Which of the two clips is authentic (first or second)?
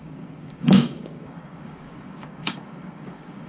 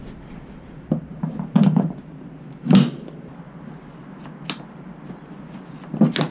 second